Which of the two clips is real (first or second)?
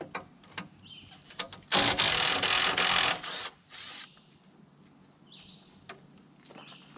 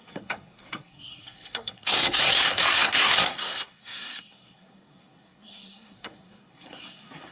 first